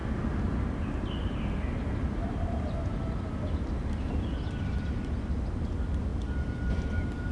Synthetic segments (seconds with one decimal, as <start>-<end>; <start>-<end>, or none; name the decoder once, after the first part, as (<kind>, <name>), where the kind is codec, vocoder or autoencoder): none